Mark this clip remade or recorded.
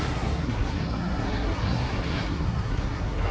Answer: remade